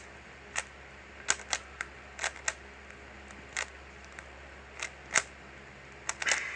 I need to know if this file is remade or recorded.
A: recorded